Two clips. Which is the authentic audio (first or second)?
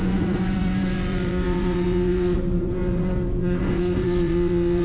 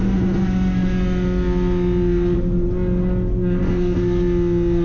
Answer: second